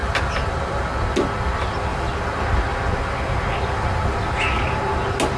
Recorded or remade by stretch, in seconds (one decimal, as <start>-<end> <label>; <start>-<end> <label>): 0.0-5.4 recorded

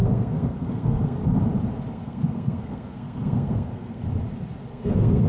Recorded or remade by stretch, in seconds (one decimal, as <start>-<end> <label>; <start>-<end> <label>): 0.0-1.2 remade; 1.2-1.9 recorded; 1.9-4.0 remade; 4.0-4.7 recorded; 4.7-5.3 remade

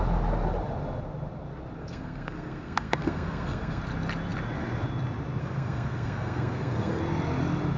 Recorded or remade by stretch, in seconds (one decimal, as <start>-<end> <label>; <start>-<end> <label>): 0.0-1.8 recorded; 1.8-3.8 remade; 3.8-5.4 recorded; 5.4-7.0 remade; 7.0-7.8 recorded

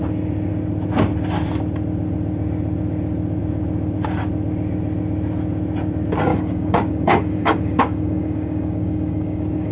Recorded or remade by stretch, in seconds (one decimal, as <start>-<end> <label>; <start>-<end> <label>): 0.0-6.3 recorded; 6.3-9.7 remade

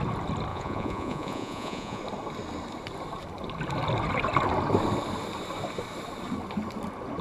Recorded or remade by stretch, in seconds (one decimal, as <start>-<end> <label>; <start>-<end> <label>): 0.0-0.5 recorded; 0.5-2.0 remade; 2.0-7.2 recorded

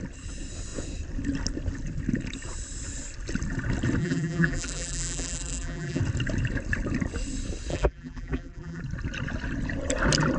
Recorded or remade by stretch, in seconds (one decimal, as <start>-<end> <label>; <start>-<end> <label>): 0.0-4.0 recorded; 4.0-6.0 remade; 6.0-7.7 recorded; 7.7-8.8 remade; 8.8-10.4 recorded

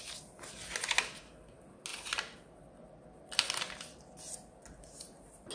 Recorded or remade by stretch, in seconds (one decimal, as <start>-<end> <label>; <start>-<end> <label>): 0.0-5.5 recorded

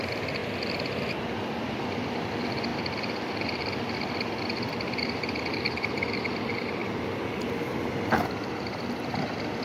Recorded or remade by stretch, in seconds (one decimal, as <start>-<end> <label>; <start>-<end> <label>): 0.0-6.8 recorded; 6.8-7.8 remade; 7.8-9.6 recorded